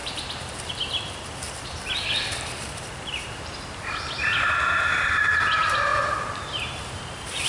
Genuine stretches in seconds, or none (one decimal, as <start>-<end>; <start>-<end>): 0.7-2.3; 4.0-5.9

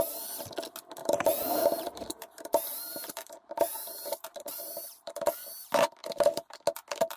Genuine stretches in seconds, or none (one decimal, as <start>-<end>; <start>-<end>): 0.0-1.0; 5.3-6.0; 6.6-7.2

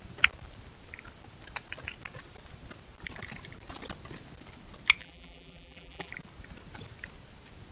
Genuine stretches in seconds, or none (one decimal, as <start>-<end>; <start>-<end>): 0.0-5.0; 6.1-7.7